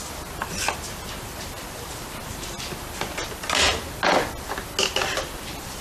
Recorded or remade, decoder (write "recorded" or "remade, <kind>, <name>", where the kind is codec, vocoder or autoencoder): recorded